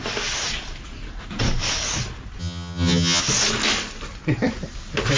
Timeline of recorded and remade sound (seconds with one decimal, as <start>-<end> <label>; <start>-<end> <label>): 0.0-2.4 recorded; 2.4-3.2 remade; 3.2-5.2 recorded